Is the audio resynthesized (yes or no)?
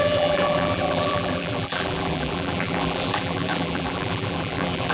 yes